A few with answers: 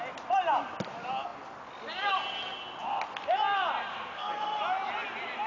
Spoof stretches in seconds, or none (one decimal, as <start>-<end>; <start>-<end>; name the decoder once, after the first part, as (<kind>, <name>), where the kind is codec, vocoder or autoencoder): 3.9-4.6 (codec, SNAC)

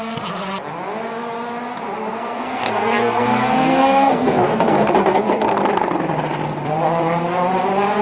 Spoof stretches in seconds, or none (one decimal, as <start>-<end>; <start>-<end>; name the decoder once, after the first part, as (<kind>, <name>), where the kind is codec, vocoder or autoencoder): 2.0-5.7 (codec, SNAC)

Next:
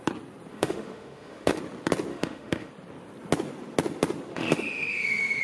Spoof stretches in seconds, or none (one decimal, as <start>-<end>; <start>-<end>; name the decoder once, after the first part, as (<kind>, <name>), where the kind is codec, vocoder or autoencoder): 0.5-1.6 (autoencoder, DAC-VAE); 2.1-2.7; 4.3-5.4

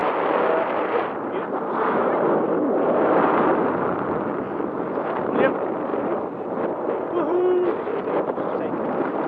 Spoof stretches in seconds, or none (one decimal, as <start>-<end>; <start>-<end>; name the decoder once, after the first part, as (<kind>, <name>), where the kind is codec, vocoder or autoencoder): 5.9-8.1 (vocoder, BigVGAN v2)

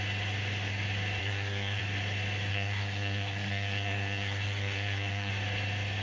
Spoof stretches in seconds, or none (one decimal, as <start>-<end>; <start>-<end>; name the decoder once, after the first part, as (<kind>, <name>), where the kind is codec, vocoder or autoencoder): 1.2-1.8 (codec, SNAC); 2.5-5.3